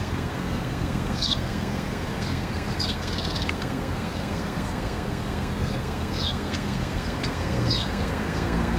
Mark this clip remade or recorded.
remade